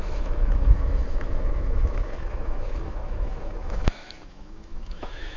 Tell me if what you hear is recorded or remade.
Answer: remade